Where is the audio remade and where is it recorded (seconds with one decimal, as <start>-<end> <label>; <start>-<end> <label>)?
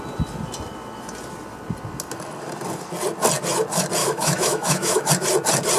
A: 0.0-4.0 recorded; 4.0-5.1 remade; 5.1-5.8 recorded